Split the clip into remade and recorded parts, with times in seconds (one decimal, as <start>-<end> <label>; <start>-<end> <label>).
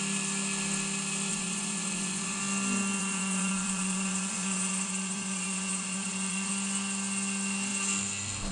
0.0-1.3 recorded; 1.3-2.4 remade; 2.4-3.0 recorded; 3.0-6.5 remade; 6.5-8.5 recorded